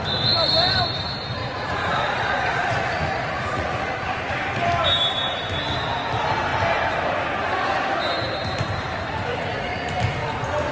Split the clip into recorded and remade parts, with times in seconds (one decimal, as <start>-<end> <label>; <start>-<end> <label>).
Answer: 0.0-1.4 recorded; 1.4-4.3 remade; 4.3-9.3 recorded; 9.3-9.9 remade; 9.9-10.7 recorded